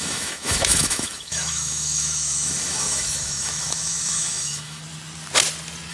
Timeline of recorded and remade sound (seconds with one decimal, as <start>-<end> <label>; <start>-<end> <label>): 0.0-4.8 remade; 4.8-5.9 recorded